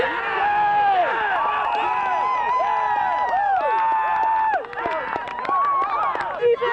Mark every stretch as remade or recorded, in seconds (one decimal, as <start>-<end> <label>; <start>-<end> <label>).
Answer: 0.0-6.7 recorded